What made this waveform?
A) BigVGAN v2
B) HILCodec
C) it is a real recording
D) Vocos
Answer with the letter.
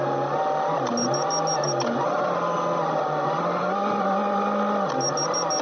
C